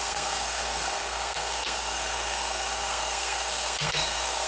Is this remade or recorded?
remade